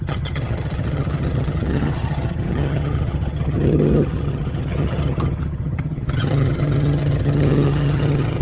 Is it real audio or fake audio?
fake